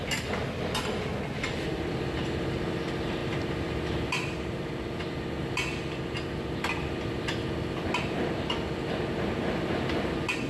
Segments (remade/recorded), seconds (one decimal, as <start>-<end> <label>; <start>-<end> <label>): 0.0-10.5 recorded